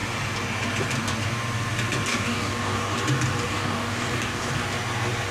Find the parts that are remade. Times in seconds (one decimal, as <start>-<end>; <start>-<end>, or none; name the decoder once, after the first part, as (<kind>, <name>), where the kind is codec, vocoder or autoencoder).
2.1-3.0 (codec, DAC); 3.5-4.5

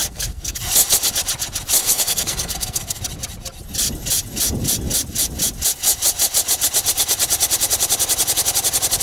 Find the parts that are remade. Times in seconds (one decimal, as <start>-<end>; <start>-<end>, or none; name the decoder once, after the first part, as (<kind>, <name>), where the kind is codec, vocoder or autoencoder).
0.0-0.6 (codec, SNAC); 1.8-3.0

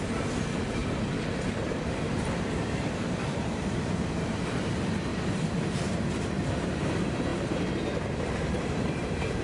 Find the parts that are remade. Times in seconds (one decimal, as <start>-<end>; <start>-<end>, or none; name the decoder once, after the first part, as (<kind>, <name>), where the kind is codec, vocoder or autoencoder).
0.0-0.8 (vocoder, BigVGAN v2); 1.7-9.4

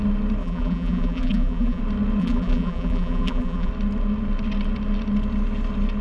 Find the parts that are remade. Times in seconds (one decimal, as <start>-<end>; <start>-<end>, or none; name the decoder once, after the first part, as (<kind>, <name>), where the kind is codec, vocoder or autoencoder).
0.4-1.8 (vocoder, BigVGAN v2); 2.2-3.7

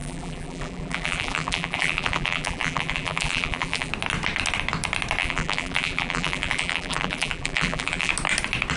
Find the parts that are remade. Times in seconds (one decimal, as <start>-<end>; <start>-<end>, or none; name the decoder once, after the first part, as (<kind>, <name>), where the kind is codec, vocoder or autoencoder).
0.0-3.9 (vocoder, BigVGAN v2); 5.2-8.1

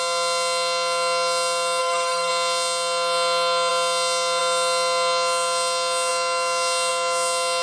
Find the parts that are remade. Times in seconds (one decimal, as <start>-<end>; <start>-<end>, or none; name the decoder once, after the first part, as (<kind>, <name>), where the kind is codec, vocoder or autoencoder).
1.8-2.3 (codec, SNAC)